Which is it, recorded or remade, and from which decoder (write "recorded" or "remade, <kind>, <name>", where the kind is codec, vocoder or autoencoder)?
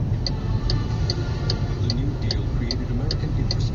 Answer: recorded